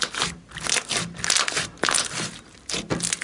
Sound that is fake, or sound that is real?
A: real